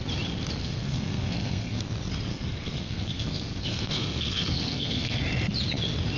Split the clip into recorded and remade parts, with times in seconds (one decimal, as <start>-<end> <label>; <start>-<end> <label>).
0.0-0.6 recorded; 0.6-1.8 remade; 1.8-2.3 recorded; 2.3-5.2 remade; 5.2-6.2 recorded